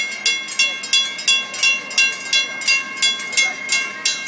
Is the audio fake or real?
real